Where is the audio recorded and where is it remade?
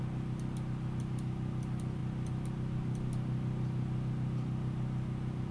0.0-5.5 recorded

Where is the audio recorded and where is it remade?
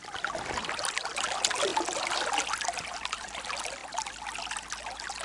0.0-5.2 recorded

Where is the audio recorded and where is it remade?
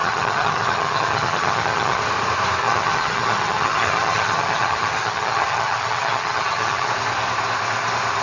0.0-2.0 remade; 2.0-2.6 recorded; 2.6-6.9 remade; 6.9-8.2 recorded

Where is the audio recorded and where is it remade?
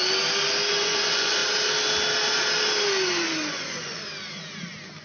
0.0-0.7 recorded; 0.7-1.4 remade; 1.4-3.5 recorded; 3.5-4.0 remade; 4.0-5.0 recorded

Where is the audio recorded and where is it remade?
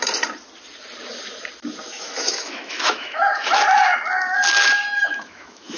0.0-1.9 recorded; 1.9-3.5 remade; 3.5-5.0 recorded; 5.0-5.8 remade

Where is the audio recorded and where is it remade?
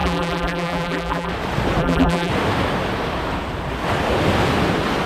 0.0-1.3 remade; 1.3-1.8 recorded; 1.8-2.3 remade; 2.3-5.1 recorded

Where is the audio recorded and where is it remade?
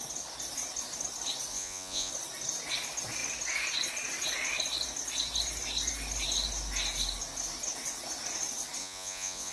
0.0-1.5 recorded; 1.5-2.1 remade; 2.1-8.8 recorded; 8.8-9.5 remade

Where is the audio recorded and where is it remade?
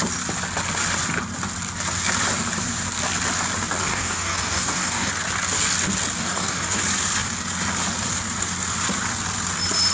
0.0-3.9 recorded; 3.9-5.1 remade; 5.1-6.2 recorded; 6.2-6.8 remade; 6.8-9.9 recorded